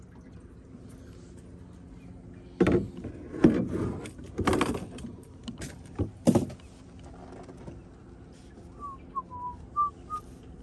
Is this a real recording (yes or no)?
yes